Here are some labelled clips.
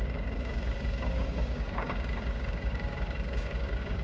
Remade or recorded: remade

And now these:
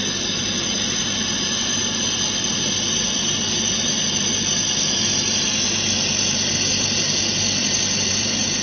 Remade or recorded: recorded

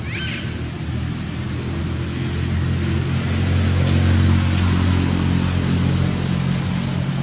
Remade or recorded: recorded